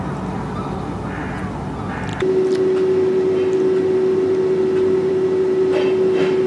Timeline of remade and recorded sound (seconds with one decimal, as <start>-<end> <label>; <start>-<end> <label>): 0.0-6.5 recorded